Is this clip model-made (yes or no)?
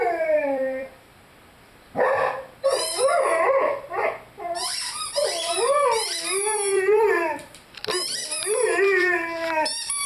yes